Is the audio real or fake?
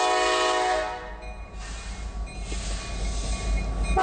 real